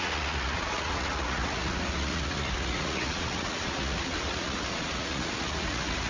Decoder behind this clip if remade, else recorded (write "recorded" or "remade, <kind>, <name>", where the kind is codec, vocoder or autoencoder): remade, vocoder, Vocos